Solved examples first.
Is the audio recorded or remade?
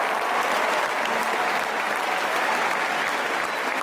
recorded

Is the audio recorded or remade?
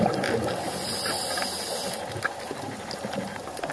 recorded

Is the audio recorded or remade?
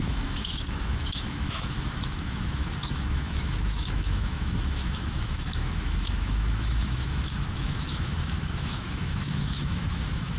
remade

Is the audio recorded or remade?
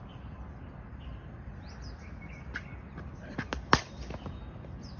recorded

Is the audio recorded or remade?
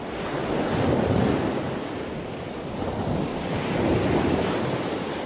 recorded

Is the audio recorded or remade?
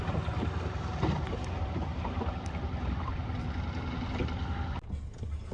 recorded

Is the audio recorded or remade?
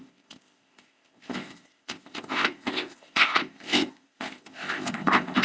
remade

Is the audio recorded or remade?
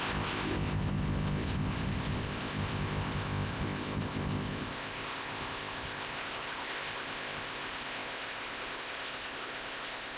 remade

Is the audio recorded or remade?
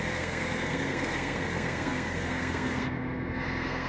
remade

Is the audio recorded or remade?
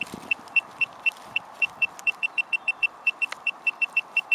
remade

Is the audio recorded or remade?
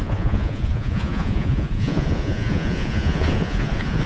remade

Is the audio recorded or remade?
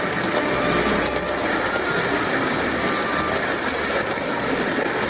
recorded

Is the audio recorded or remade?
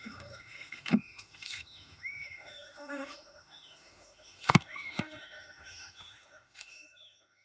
remade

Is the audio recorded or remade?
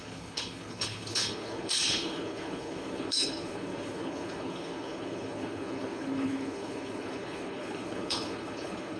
remade